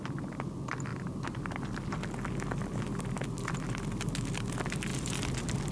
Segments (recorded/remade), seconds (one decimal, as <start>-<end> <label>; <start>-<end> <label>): 0.0-5.7 recorded